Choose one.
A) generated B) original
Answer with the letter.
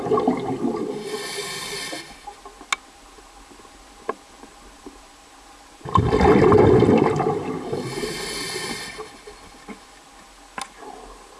B